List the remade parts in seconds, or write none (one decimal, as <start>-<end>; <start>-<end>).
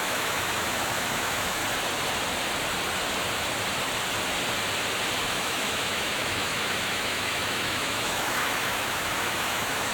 0.0-1.6; 5.2-9.9